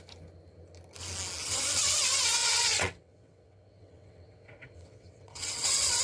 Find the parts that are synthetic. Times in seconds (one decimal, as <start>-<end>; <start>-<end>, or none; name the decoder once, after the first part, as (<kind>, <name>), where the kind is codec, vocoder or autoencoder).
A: 1.4-2.0 (vocoder, WaveNeXt); 2.4-6.0